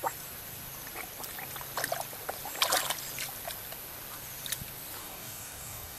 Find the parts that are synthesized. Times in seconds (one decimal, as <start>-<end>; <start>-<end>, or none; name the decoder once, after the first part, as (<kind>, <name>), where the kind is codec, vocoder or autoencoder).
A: 5.0-6.0 (codec, DAC)